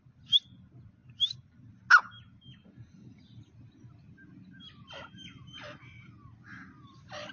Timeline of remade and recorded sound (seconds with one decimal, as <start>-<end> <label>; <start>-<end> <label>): 0.0-7.3 recorded